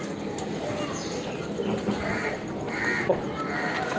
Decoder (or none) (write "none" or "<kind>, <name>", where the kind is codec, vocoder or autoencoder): none